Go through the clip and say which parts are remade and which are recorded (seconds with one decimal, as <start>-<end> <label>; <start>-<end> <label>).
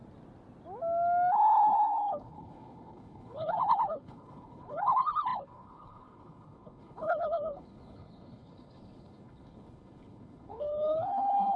0.0-1.3 recorded; 1.3-11.6 remade